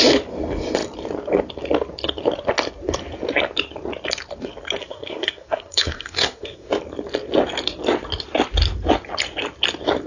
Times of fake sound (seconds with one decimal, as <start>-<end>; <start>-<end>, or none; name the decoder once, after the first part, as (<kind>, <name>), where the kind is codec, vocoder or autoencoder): 4.8-6.7 (codec, SNAC)